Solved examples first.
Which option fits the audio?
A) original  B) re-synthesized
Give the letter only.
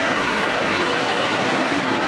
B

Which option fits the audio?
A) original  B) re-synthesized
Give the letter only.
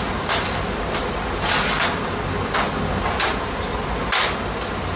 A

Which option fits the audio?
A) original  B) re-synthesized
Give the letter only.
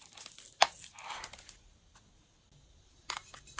A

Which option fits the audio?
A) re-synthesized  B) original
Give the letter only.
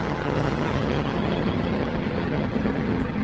A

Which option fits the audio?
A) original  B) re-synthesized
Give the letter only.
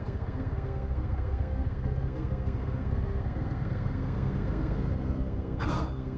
B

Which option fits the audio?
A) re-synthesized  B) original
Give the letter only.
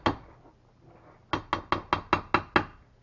B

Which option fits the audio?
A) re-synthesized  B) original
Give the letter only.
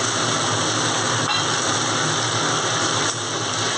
B